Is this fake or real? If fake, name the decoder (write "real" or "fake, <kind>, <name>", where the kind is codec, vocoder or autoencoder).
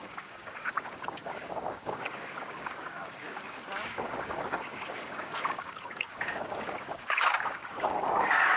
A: fake, codec, DAC